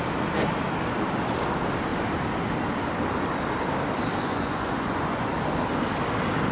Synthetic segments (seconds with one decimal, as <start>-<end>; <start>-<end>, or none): 4.2-5.3